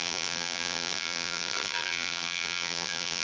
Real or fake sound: fake